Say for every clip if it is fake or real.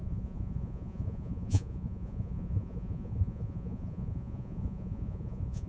fake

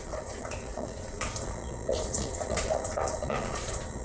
fake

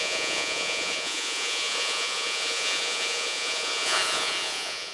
fake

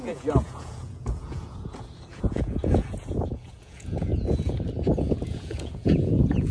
fake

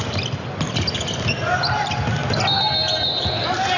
real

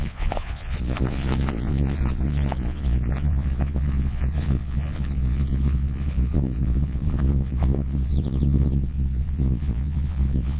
fake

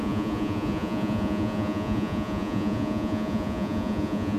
fake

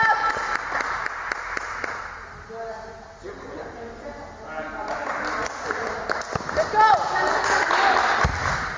real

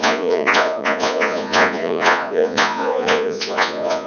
fake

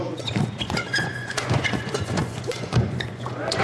fake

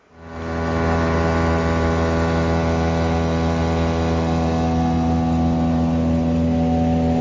real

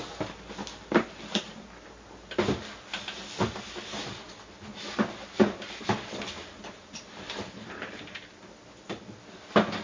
real